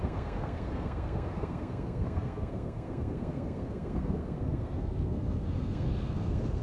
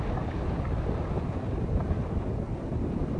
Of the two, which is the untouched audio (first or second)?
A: second